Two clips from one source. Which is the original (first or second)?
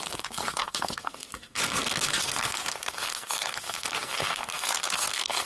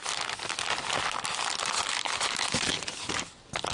second